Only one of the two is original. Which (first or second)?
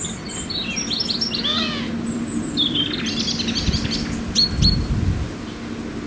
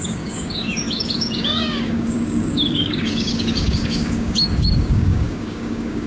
first